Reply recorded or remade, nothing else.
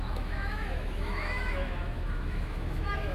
remade